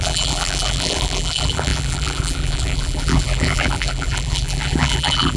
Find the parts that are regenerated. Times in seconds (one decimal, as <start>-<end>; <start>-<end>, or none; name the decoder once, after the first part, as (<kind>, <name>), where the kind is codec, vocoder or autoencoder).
0.0-5.4 (vocoder, BigVGAN v2)